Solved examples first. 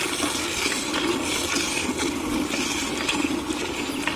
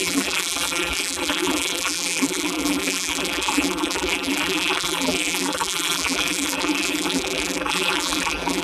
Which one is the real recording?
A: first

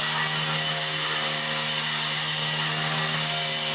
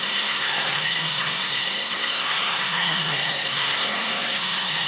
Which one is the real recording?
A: first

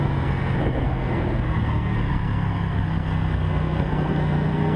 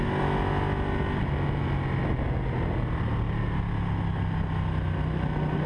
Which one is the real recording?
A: second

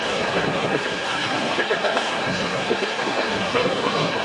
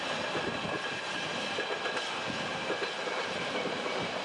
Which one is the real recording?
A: second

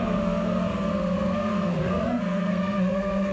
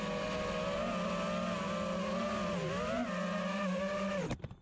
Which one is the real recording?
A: second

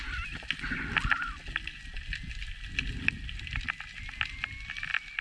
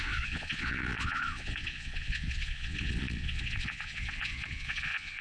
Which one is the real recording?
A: first